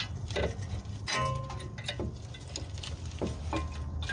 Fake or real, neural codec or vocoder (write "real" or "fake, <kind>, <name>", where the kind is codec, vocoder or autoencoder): real